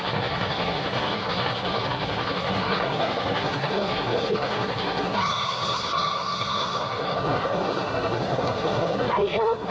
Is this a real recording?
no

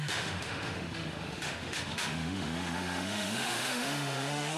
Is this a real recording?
no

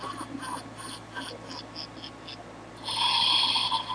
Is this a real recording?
yes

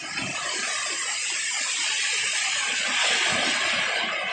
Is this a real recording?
yes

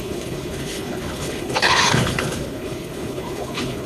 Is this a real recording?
no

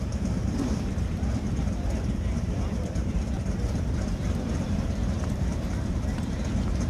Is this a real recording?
no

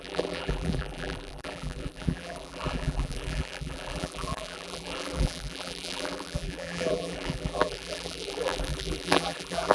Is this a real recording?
no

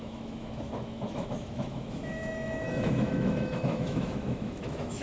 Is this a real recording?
no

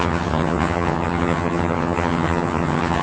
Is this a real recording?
no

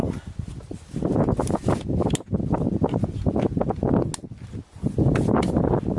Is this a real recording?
yes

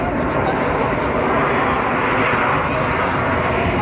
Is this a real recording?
yes